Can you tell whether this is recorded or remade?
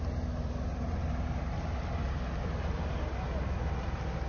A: recorded